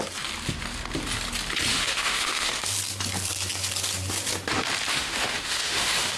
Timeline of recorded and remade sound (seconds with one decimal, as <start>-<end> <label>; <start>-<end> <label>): 0.0-1.7 recorded; 1.7-2.7 remade; 2.7-4.9 recorded; 4.9-6.2 remade